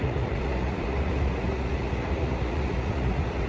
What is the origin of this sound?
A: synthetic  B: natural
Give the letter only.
A